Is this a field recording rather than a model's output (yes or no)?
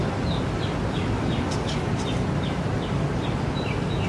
yes